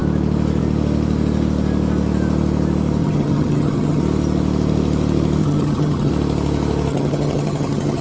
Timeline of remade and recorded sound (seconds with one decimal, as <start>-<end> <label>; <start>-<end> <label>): 0.0-3.0 recorded; 3.0-4.0 remade; 4.0-5.4 recorded; 5.4-6.1 remade; 6.1-6.9 recorded; 6.9-8.0 remade